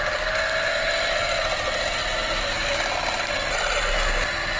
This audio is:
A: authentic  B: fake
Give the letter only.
A